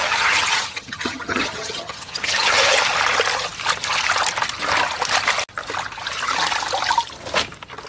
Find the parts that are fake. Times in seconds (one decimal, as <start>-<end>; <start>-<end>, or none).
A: 0.0-2.8